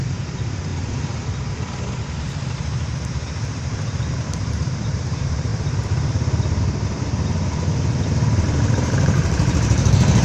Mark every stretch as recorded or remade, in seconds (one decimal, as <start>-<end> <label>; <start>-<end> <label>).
0.0-5.5 remade; 5.5-8.7 recorded; 8.7-10.2 remade